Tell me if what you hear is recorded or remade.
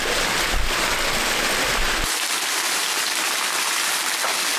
recorded